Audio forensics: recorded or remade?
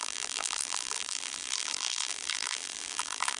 remade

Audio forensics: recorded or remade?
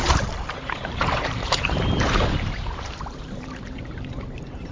remade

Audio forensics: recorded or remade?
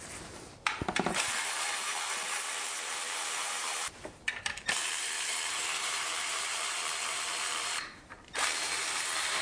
remade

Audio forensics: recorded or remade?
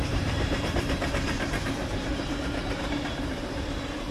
remade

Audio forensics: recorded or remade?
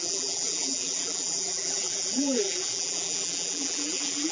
remade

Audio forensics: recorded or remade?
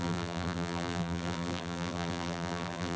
remade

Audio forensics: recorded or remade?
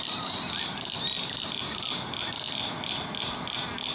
recorded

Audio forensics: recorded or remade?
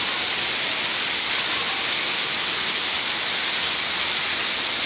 recorded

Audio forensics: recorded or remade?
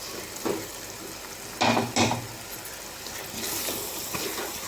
recorded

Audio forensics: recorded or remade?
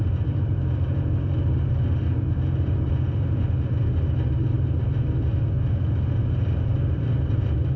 remade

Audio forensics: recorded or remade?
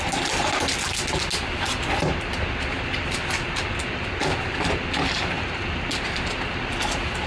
recorded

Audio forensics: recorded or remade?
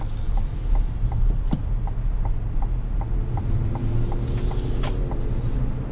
recorded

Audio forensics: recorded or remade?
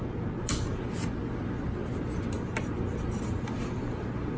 recorded